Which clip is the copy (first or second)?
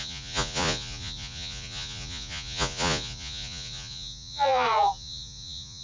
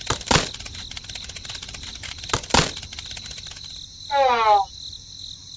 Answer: first